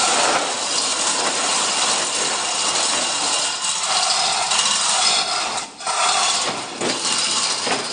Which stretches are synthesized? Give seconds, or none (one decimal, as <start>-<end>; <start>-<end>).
0.9-1.6